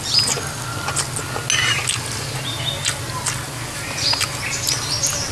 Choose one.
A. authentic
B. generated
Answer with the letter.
A